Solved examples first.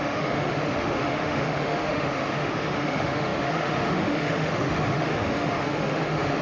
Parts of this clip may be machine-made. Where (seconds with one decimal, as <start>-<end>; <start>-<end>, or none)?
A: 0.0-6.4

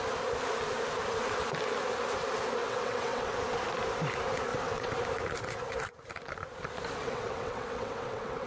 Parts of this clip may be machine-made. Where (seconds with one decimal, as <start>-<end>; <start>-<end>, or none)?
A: 2.6-3.4; 4.5-5.0; 7.0-8.5

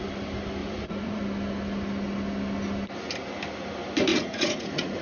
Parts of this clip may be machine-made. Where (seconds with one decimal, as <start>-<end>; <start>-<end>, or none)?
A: 0.6-1.2; 4.1-5.0